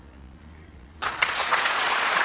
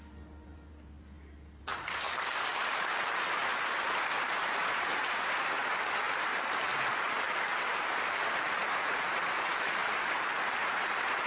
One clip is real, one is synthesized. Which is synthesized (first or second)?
first